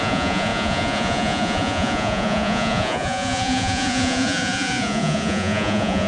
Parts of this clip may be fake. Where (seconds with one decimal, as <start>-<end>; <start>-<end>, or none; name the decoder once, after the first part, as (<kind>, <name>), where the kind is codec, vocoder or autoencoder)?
0.0-6.1 (vocoder, Vocos)